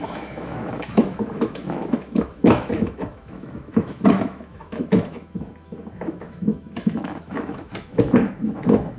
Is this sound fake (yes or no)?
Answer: yes